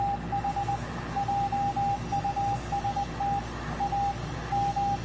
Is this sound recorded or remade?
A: recorded